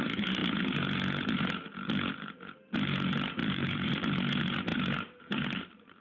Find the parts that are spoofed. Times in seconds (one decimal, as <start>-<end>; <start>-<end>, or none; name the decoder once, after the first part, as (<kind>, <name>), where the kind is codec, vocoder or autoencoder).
3.4-3.9 (vocoder, BigVGAN v2)